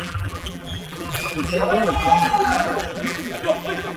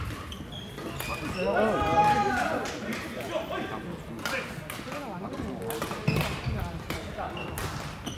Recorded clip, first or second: second